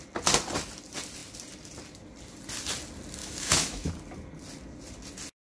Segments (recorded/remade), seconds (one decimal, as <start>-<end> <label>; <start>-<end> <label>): 0.0-3.2 recorded; 3.2-3.9 remade; 3.9-5.4 recorded